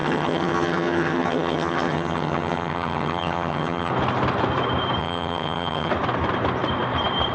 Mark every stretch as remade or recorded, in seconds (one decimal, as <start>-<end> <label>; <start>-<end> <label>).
0.0-3.9 remade; 3.9-5.0 recorded; 5.0-5.9 remade; 5.9-7.3 recorded